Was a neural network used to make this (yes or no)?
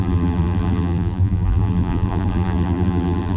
yes